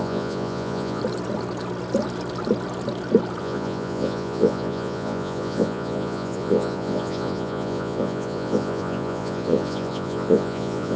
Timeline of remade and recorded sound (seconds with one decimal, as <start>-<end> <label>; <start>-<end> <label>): 0.0-1.0 remade; 1.0-3.4 recorded; 3.4-11.0 remade